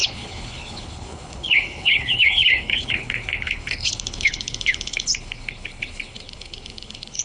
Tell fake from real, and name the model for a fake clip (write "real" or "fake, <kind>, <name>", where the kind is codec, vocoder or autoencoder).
fake, codec, HILCodec